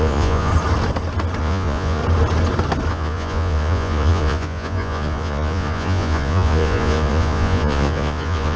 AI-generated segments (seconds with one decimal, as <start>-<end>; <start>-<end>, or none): 0.0-0.5; 1.4-2.0; 2.9-8.6